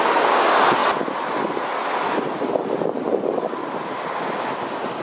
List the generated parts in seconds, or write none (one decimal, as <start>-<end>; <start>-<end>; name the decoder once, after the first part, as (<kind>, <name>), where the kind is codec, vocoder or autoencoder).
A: none